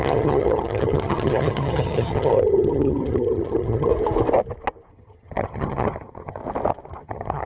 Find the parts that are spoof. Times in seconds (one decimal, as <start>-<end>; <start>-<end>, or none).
0.0-3.9; 4.9-6.4; 7.0-7.5